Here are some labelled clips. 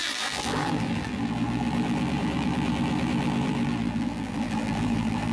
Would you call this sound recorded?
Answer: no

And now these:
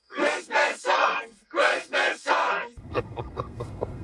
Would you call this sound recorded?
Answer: no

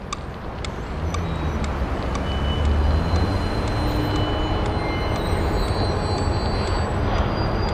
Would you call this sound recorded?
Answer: yes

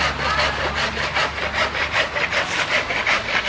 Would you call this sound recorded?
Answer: yes